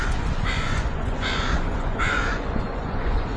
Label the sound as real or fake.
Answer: fake